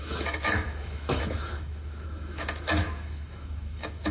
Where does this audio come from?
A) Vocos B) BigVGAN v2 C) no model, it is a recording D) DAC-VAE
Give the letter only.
D